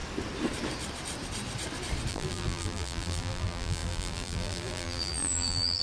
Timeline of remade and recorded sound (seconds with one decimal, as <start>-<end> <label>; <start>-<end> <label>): 0.0-2.1 recorded; 2.1-5.8 remade